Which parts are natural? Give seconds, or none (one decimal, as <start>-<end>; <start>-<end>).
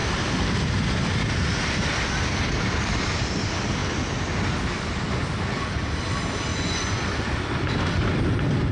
0.0-6.5; 7.0-8.7